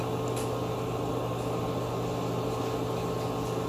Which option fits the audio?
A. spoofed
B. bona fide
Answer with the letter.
B